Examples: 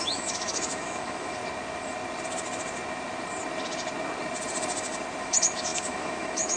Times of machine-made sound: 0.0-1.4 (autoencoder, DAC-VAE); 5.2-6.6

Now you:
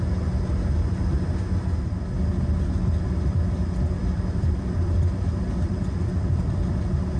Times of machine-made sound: 4.0-6.7 (vocoder, BigVGAN v2)

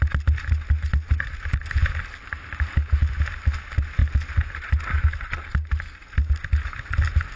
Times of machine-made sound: none

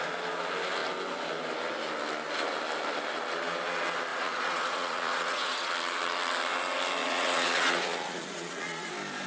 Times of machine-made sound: 4.1-5.7 (vocoder, Vocos); 7.0-8.9